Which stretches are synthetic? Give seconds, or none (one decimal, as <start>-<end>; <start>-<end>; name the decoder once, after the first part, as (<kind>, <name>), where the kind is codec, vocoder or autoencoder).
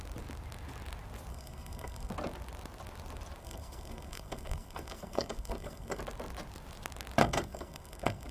1.3-2.1 (codec, SNAC); 3.4-6.0; 7.2-8.3